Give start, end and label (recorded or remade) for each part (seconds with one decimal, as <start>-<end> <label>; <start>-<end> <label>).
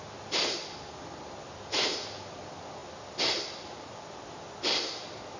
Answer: 0.0-5.4 recorded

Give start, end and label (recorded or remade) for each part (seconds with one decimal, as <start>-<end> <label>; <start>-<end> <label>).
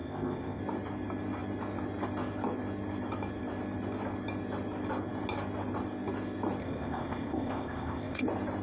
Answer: 0.0-0.6 remade; 0.6-6.6 recorded; 6.6-8.2 remade; 8.2-8.6 recorded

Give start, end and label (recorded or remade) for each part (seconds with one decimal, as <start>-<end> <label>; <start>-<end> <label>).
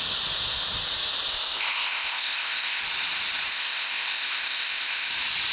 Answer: 0.0-1.3 recorded; 1.3-2.8 remade; 2.8-3.5 recorded; 3.5-5.1 remade; 5.1-5.5 recorded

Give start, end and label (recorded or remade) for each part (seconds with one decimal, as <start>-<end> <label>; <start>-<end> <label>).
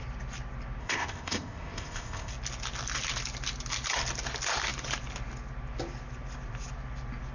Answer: 0.0-0.8 recorded; 0.8-2.3 remade; 2.3-7.3 recorded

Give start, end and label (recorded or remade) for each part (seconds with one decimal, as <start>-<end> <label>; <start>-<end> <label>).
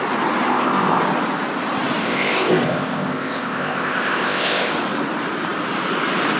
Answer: 0.0-0.5 recorded; 0.5-1.0 remade; 1.0-2.0 recorded; 2.0-4.7 remade; 4.7-6.4 recorded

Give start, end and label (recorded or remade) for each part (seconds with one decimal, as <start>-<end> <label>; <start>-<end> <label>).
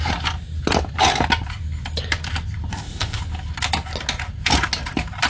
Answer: 0.0-2.7 recorded; 2.7-3.2 remade; 3.2-5.3 recorded